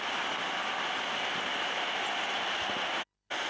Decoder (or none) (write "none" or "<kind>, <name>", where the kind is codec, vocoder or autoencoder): none